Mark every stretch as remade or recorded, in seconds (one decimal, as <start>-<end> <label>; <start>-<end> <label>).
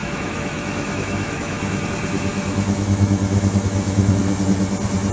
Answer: 0.0-1.8 remade; 1.8-2.3 recorded; 2.3-4.2 remade; 4.2-5.1 recorded